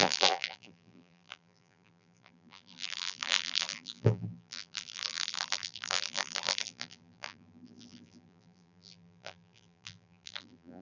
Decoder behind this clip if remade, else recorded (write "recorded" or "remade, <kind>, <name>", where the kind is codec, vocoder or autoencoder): remade, vocoder, BigVGAN v2